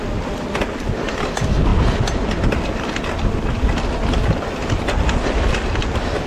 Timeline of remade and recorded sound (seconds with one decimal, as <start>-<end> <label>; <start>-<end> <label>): 0.0-6.3 recorded